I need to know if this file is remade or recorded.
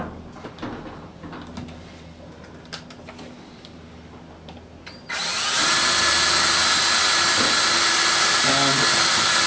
recorded